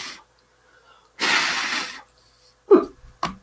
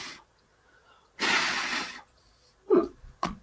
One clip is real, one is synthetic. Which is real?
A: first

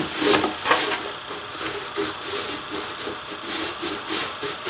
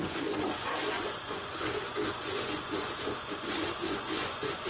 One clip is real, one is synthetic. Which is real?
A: first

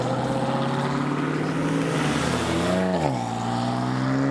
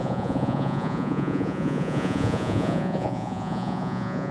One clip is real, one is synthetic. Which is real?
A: first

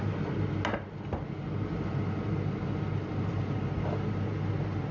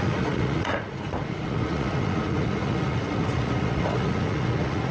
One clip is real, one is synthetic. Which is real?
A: first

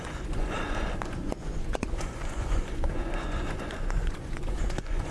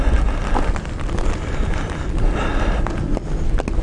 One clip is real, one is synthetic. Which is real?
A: second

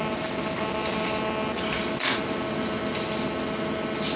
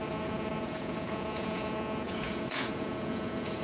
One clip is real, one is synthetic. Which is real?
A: first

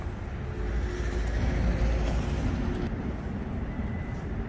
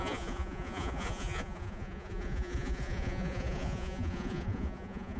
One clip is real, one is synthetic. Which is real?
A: first